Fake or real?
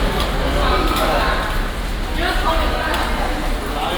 real